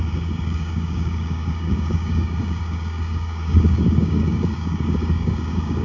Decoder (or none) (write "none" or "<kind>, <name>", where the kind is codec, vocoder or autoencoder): codec, DAC